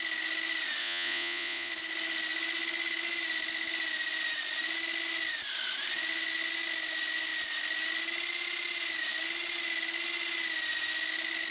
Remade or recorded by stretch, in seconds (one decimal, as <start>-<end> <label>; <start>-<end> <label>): 0.0-0.8 recorded; 0.8-1.7 remade; 1.7-11.5 recorded